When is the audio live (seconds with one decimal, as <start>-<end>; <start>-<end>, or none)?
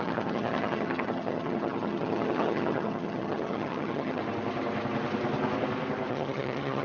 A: 4.2-6.1